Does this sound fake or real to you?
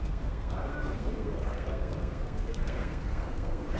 fake